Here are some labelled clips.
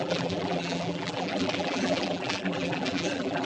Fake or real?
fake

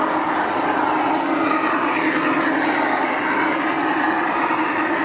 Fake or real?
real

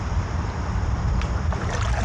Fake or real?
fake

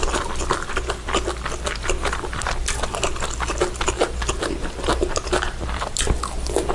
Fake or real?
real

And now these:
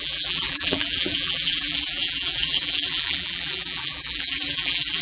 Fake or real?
fake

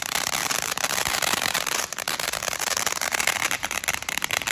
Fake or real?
fake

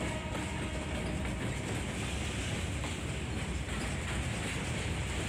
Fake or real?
real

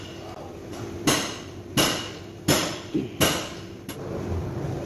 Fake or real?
real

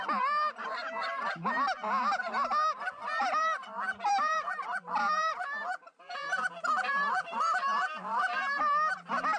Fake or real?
fake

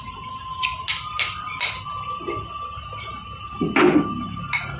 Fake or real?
real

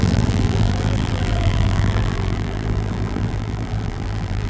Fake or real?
fake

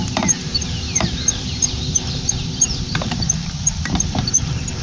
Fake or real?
fake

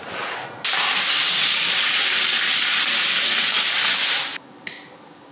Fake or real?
real